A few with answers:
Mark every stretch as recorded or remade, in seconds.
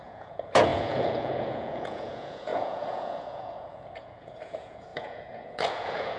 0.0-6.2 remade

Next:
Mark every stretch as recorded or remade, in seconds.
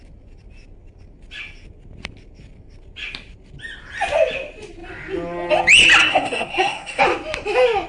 0.0-6.0 recorded; 6.0-7.0 remade; 7.0-7.9 recorded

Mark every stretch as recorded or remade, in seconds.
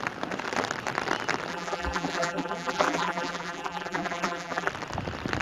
0.0-1.5 recorded; 1.5-4.7 remade; 4.7-5.4 recorded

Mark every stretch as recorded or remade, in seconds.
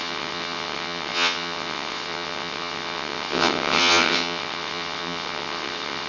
0.0-6.1 remade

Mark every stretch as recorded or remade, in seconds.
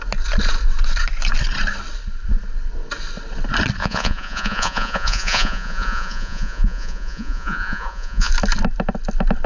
0.0-3.8 recorded; 3.8-8.3 remade; 8.3-9.5 recorded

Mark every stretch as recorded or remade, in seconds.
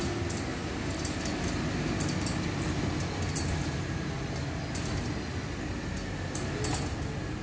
0.0-7.4 recorded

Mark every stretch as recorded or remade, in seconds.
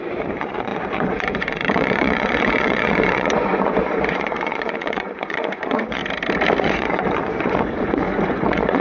0.0-6.0 remade; 6.0-6.6 recorded; 6.6-8.8 remade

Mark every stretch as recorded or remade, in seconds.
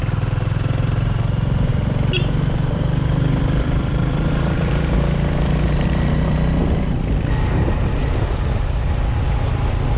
0.0-1.7 recorded; 1.7-5.9 remade; 5.9-10.0 recorded